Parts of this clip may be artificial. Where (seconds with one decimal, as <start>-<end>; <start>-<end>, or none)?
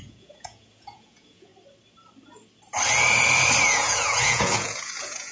0.0-1.5; 3.6-5.3